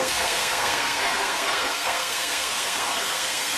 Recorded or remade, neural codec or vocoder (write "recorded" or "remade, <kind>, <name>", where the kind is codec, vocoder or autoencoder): remade, codec, SNAC